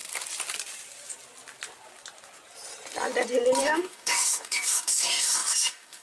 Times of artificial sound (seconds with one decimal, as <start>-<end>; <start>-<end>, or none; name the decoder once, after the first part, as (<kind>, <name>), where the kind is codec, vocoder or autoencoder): 3.6-6.0 (codec, DAC)